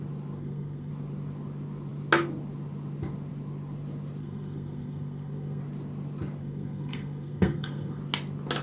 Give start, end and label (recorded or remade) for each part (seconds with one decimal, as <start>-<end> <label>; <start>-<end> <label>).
0.0-0.4 recorded; 0.4-0.9 remade; 0.9-4.2 recorded; 4.2-5.6 remade; 5.6-6.4 recorded; 6.4-8.0 remade; 8.0-8.6 recorded